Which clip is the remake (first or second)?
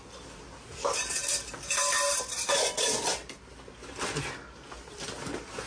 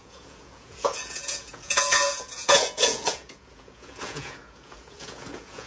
second